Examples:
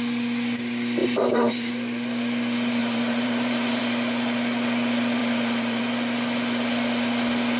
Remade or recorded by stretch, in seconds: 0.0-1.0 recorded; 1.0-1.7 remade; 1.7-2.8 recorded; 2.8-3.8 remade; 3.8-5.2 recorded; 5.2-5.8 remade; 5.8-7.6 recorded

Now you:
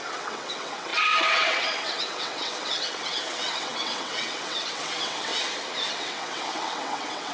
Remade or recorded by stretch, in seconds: 0.0-5.3 remade; 5.3-5.9 recorded; 5.9-7.3 remade

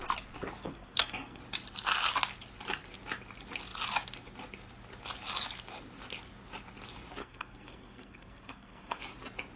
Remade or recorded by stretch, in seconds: 0.0-0.6 recorded; 0.6-1.4 remade; 1.4-7.2 recorded; 7.2-9.0 remade; 9.0-9.6 recorded

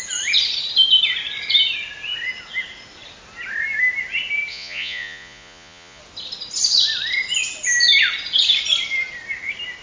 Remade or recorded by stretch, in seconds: 0.0-4.5 recorded; 4.5-6.0 remade; 6.0-9.8 recorded

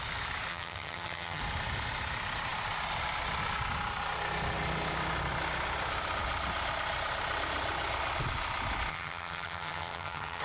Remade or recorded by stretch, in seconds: 0.0-0.5 recorded; 0.5-1.4 remade; 1.4-8.9 recorded; 8.9-10.4 remade